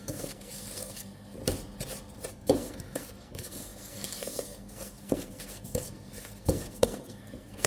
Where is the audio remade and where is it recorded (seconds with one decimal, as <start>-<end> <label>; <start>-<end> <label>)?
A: 0.0-1.4 remade; 1.4-2.3 recorded; 2.3-7.7 remade